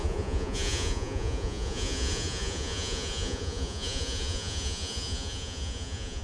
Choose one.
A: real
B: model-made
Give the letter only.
B